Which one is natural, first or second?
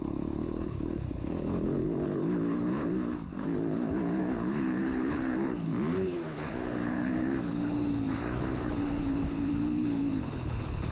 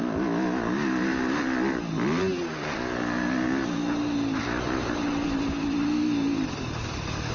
second